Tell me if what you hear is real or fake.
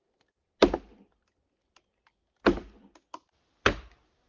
real